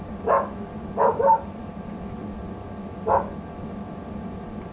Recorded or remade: remade